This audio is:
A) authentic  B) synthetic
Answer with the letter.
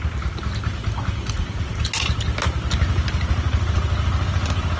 A